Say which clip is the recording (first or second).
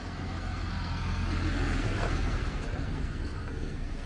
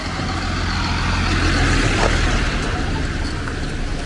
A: second